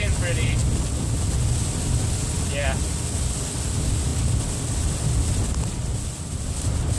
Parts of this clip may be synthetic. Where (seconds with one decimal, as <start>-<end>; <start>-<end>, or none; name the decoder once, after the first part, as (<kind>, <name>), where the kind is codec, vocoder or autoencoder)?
4.1-5.0 (vocoder, BigVGAN v2)